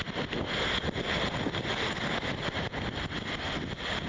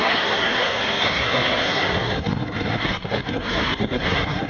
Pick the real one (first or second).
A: first